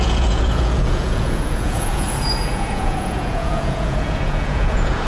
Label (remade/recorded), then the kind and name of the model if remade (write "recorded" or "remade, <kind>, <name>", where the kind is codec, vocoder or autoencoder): remade, vocoder, Vocos